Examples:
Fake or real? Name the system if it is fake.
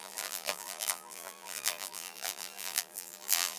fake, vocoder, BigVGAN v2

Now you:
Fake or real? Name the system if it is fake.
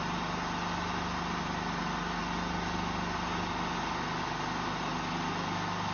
real